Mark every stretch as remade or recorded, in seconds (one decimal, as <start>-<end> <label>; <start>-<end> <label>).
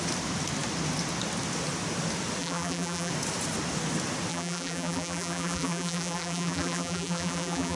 0.0-2.4 recorded; 2.4-3.1 remade; 3.1-4.3 recorded; 4.3-7.8 remade